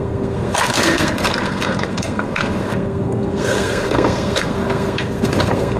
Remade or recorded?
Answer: remade